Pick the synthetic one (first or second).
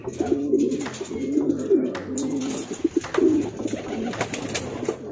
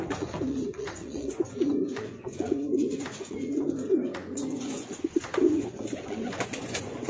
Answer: second